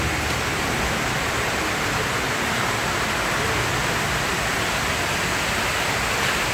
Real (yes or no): yes